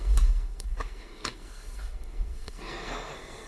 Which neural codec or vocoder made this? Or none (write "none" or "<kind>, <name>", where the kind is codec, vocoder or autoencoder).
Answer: codec, SNAC